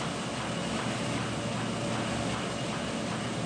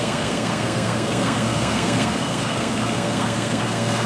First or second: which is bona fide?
first